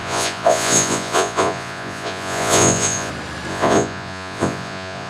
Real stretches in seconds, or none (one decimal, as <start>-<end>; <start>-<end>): 3.1-3.5